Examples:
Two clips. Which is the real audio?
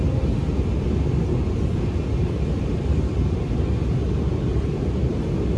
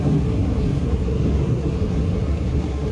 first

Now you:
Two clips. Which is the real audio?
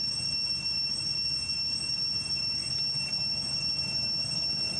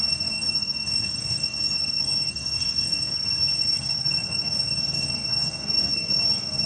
first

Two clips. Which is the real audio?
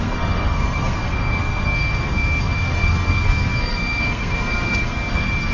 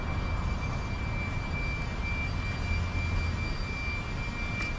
second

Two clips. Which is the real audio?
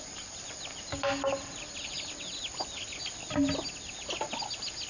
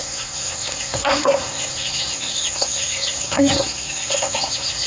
first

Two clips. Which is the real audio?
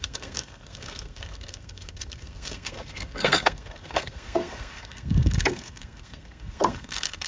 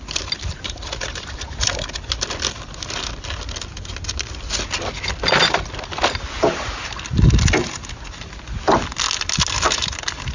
second